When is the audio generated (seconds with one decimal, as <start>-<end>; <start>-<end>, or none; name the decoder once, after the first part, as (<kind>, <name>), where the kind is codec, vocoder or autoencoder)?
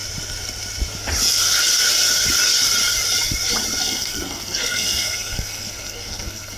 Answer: 3.8-6.6 (codec, SNAC)